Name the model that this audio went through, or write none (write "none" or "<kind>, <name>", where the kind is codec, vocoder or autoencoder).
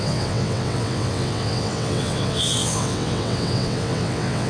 vocoder, WaveNeXt